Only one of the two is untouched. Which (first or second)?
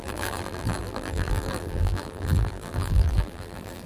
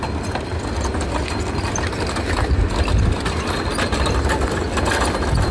second